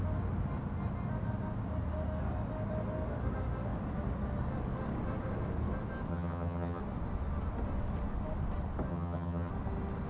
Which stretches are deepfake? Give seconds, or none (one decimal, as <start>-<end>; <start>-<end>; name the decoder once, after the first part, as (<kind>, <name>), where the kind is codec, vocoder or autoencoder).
6.1-6.8 (vocoder, HiFi-GAN); 8.9-9.5

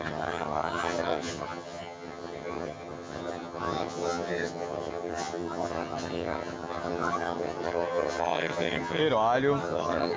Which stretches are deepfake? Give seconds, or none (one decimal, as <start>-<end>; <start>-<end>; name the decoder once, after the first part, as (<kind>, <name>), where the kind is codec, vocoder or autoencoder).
0.0-9.0 (vocoder, HiFi-GAN); 9.6-10.2

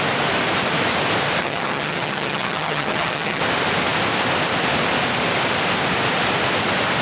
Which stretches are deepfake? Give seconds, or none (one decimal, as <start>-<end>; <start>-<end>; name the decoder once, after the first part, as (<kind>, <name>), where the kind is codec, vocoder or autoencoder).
1.4-3.4 (vocoder, HiFi-GAN)

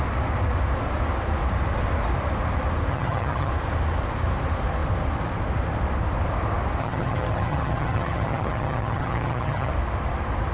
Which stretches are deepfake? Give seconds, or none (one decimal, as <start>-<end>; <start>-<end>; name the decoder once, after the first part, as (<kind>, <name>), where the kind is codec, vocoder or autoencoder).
2.9-3.5 (vocoder, HiFi-GAN); 6.8-9.7

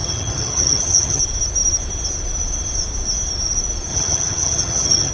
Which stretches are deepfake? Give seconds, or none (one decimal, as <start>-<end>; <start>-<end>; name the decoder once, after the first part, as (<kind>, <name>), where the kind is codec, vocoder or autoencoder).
0.0-1.2 (vocoder, HiFi-GAN); 3.9-5.1

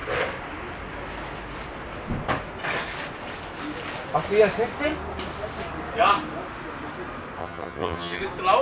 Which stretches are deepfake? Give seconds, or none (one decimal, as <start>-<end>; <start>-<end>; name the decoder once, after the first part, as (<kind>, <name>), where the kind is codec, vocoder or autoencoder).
7.4-8.2 (vocoder, HiFi-GAN)

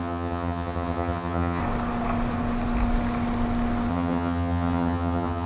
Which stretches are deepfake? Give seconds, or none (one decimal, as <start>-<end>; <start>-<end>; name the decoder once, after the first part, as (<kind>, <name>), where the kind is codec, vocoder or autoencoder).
0.0-1.6 (vocoder, HiFi-GAN); 3.9-5.5